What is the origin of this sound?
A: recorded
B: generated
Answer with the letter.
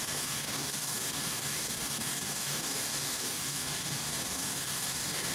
B